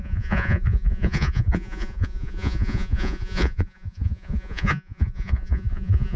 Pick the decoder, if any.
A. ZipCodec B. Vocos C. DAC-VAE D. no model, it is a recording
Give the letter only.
B